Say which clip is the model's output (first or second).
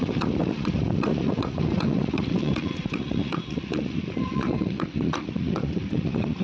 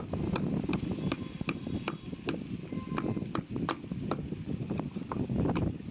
first